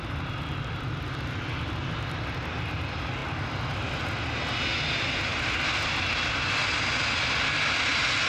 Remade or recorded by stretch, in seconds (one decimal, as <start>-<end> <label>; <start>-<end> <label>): 0.0-8.3 recorded